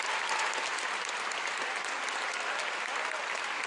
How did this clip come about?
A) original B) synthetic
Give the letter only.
A